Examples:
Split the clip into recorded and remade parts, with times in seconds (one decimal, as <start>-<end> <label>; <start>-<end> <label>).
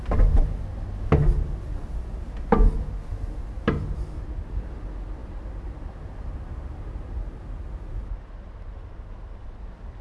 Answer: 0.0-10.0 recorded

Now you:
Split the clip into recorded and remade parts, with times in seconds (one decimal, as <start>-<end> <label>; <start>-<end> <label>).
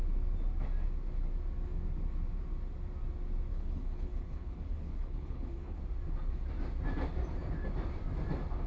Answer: 0.0-3.5 recorded; 3.5-5.8 remade; 5.8-8.7 recorded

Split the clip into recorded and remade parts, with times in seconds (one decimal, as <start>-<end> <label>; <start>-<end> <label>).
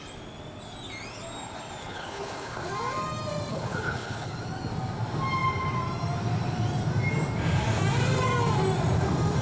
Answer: 0.0-1.8 recorded; 1.8-2.7 remade; 2.7-3.5 recorded; 3.5-4.3 remade; 4.3-9.4 recorded